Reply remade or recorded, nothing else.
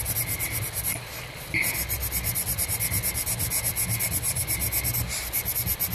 recorded